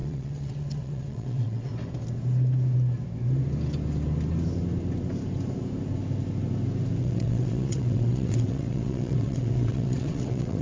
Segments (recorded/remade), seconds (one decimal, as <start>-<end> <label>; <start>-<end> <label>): 0.0-1.7 remade; 1.7-7.0 recorded; 7.0-10.6 remade